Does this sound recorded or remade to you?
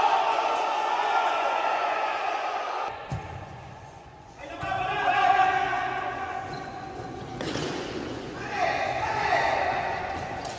remade